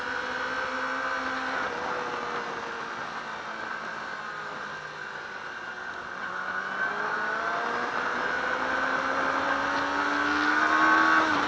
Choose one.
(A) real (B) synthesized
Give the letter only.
A